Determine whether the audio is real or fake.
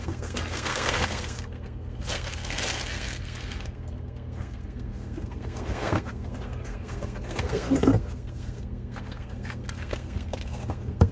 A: fake